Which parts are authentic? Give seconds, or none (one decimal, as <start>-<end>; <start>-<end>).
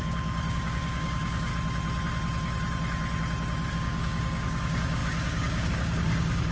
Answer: 1.5-3.7